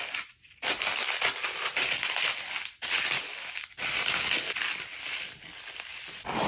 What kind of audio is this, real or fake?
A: real